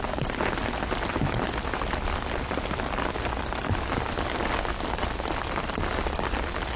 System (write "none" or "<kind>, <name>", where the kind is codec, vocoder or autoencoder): none